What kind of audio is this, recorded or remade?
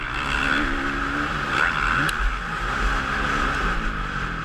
recorded